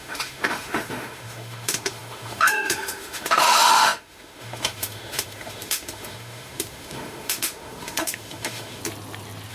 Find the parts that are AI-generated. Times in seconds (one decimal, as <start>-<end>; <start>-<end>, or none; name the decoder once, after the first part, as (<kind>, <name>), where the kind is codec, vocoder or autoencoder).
0.0-8.8 (autoencoder, DAC-VAE)